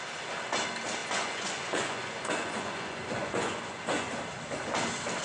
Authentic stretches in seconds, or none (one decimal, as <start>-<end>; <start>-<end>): 0.0-1.0; 4.1-5.2